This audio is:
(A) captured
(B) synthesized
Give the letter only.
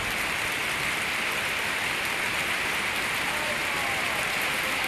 A